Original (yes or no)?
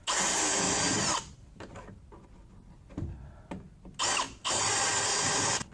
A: yes